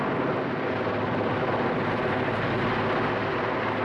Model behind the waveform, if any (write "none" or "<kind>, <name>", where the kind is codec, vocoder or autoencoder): none